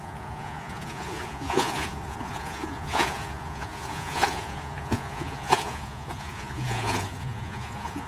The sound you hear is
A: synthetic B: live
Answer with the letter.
A